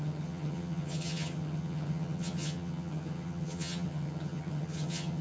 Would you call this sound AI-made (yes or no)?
yes